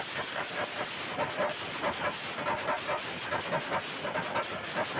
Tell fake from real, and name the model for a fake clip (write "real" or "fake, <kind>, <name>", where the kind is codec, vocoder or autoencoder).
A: real